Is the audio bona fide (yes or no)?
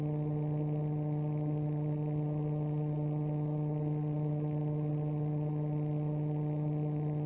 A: yes